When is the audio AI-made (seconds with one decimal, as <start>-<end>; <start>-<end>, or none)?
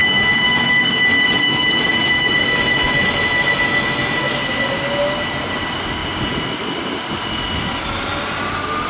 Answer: 0.0-4.4